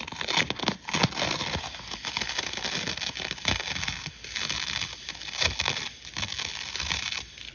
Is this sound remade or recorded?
recorded